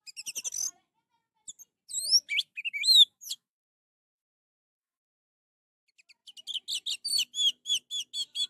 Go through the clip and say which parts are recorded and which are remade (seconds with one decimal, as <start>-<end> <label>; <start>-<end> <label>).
0.0-2.4 recorded; 2.4-5.4 remade; 5.4-8.5 recorded